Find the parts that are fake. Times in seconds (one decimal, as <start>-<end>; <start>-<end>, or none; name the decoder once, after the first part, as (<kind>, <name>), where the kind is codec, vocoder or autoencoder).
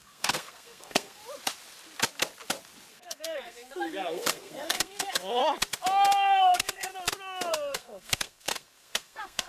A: 0.0-1.2 (codec, SNAC); 2.9-5.4; 6.4-6.9; 7.5-9.5